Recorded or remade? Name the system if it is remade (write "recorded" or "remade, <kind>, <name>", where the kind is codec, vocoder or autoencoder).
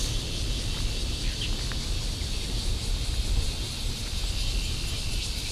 recorded